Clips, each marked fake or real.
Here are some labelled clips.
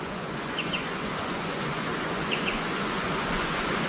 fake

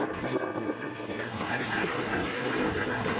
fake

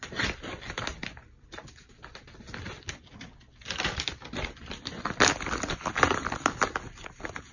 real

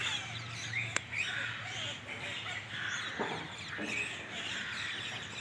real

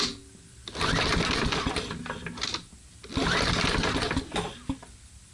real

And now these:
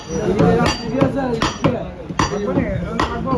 real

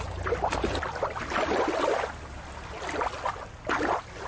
real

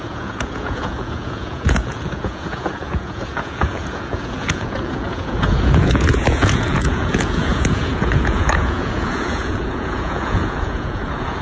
fake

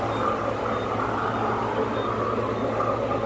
real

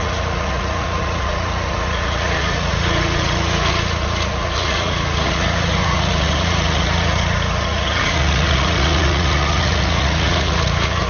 fake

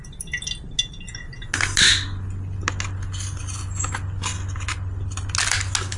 real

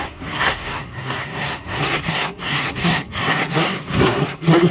fake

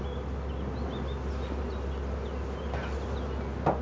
real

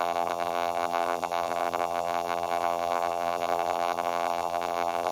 fake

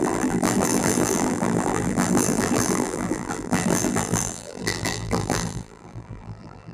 fake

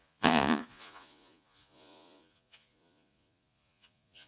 fake